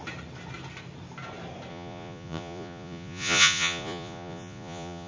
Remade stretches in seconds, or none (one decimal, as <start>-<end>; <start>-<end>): 1.7-5.1